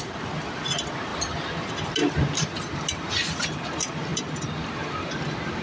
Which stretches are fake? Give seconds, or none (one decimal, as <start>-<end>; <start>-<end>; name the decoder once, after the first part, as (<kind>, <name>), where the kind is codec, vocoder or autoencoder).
none